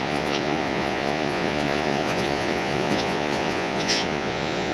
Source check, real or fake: fake